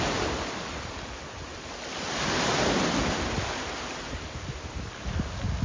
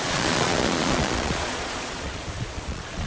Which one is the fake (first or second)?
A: second